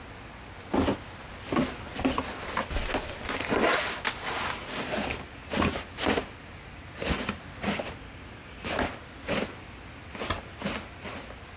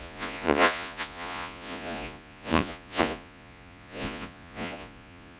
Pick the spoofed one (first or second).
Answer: second